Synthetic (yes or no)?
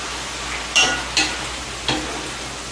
no